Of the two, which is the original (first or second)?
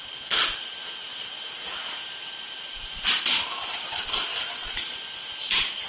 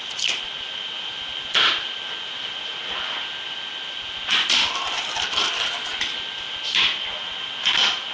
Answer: second